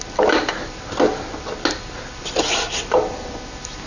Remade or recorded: recorded